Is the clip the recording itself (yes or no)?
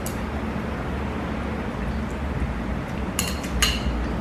yes